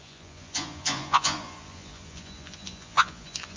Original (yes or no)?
no